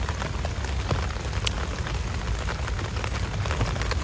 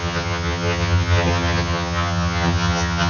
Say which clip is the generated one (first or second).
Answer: second